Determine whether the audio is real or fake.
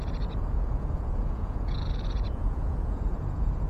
fake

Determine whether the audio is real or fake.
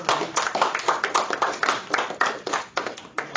real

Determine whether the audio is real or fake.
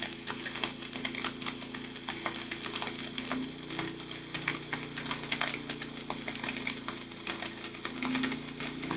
real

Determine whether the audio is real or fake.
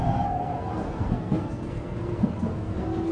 fake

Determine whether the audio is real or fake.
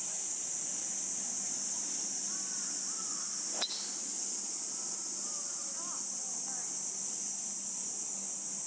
real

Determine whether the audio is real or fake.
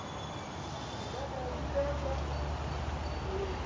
real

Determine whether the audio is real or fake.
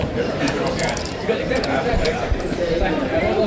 fake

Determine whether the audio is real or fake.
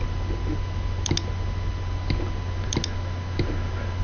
real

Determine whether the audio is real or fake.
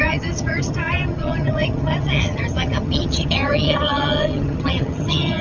fake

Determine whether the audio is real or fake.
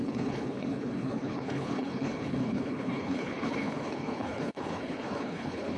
fake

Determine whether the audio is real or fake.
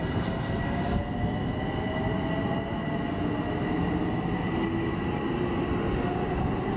real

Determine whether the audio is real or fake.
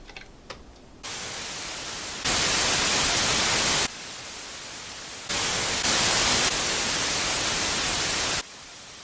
real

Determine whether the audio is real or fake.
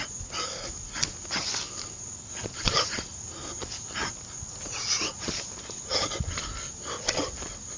real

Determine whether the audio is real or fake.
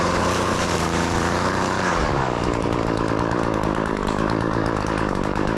fake